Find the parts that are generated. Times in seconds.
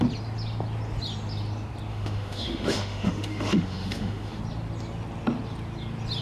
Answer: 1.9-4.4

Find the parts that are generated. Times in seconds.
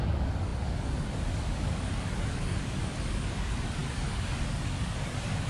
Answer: 0.0-5.5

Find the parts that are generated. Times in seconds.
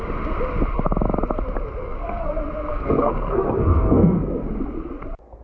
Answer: 1.8-2.3; 2.7-4.5